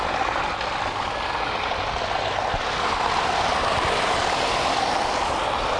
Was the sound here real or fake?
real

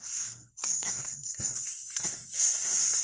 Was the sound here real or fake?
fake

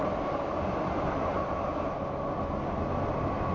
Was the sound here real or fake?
real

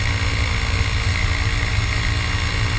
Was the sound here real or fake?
real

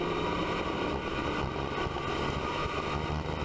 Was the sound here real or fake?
real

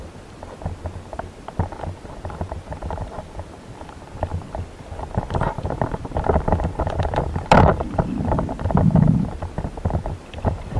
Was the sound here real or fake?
real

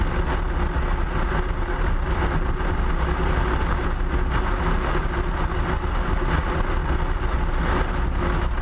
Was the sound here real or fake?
real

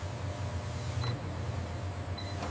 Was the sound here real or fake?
real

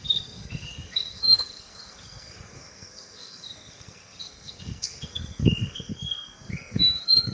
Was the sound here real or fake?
fake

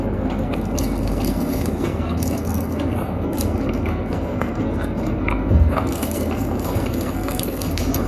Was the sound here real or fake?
fake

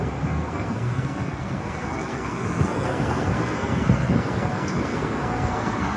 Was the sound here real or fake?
fake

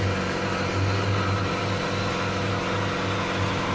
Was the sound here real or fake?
real